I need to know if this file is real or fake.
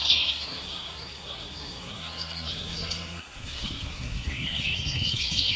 fake